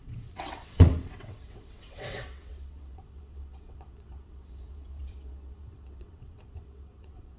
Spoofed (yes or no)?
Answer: yes